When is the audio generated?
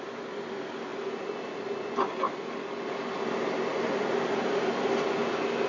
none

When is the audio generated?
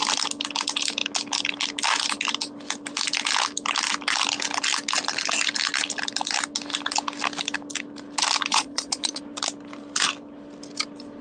8.5-9.2 (vocoder, Vocos)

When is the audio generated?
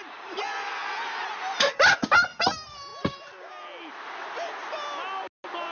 none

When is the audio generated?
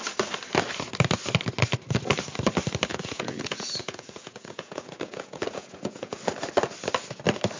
2.9-6.2 (vocoder, Vocos)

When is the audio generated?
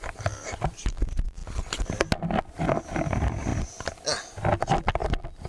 none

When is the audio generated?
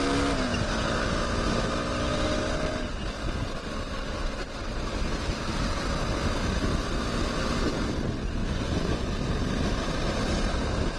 8.4-9.1 (vocoder, Vocos)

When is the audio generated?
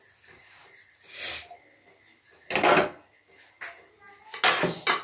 none